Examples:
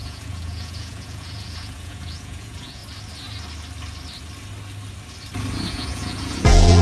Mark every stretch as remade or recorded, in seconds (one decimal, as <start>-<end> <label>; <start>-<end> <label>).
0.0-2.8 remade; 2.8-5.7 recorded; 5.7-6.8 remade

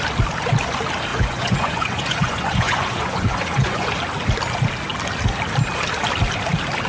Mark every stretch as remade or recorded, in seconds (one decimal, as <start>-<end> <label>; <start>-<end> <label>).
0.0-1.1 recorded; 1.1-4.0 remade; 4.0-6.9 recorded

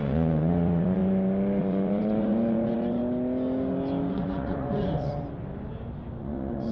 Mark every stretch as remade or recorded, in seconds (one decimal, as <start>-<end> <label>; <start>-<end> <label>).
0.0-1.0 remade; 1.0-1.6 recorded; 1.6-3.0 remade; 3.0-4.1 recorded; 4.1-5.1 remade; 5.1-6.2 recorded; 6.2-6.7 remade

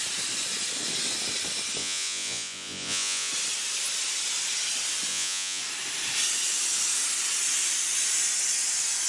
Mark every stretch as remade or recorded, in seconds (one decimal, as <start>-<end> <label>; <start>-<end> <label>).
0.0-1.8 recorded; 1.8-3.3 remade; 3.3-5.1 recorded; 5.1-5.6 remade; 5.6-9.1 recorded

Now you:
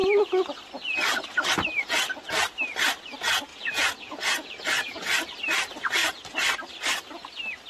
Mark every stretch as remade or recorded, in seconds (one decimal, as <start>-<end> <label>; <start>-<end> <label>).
0.0-3.5 recorded; 3.5-5.0 remade; 5.0-7.7 recorded